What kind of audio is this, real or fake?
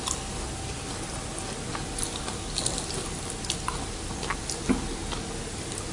real